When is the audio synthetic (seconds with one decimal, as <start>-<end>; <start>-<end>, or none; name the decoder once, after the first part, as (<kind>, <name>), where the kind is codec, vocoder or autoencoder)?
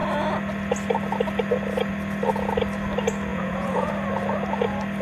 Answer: 3.3-3.9 (vocoder, Vocos)